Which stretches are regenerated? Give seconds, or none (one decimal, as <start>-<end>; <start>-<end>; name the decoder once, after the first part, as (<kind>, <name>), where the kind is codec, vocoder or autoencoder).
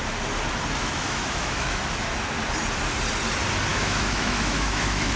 0.8-1.8 (autoencoder, DAC-VAE); 3.7-5.2